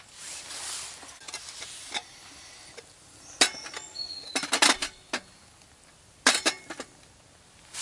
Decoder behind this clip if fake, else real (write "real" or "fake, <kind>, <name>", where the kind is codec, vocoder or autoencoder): real